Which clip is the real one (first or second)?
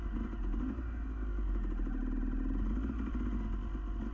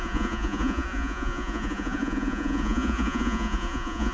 first